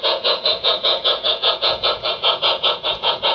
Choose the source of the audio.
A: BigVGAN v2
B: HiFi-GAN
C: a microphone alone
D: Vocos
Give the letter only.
D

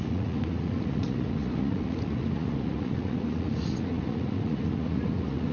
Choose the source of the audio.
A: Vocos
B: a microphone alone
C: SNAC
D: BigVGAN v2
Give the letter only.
A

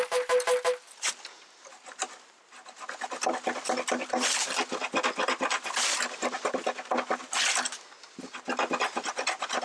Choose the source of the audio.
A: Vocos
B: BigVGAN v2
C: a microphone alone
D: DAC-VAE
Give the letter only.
C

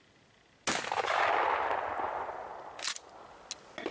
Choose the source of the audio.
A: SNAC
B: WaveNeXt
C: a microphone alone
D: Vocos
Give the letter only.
C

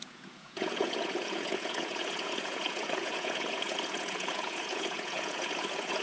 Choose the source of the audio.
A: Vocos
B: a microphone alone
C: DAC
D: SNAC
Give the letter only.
A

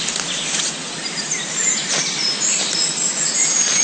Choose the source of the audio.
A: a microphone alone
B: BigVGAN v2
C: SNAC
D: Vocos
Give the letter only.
A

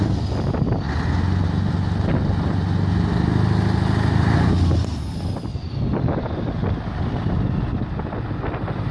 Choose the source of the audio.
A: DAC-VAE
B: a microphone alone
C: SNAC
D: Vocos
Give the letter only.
B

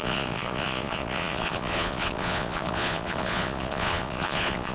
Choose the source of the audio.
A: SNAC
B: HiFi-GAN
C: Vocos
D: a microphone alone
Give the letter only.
C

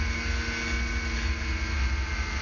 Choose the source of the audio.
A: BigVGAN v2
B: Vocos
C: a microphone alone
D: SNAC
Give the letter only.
C